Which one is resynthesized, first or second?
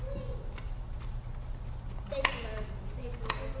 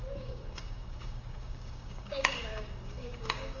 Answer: second